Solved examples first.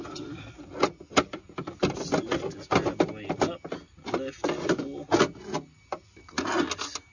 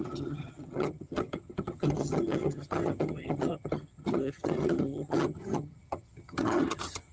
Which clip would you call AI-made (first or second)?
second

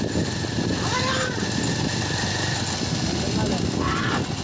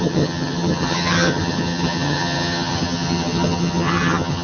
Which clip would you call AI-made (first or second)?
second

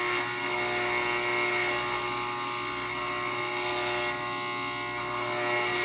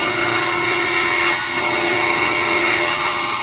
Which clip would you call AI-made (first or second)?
second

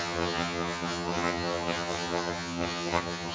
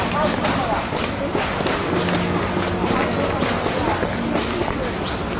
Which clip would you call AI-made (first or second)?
first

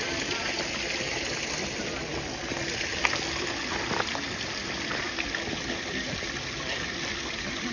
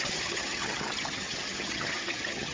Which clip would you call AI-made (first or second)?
second